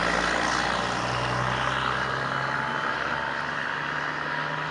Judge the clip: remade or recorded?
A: recorded